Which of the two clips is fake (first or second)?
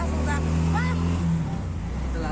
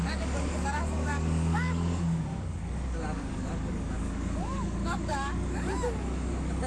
second